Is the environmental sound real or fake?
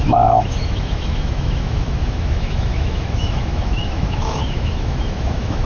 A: fake